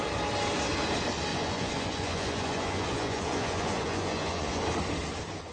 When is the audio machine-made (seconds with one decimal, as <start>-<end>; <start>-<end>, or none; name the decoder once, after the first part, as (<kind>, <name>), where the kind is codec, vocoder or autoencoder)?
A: 1.3-4.6 (vocoder, Vocos)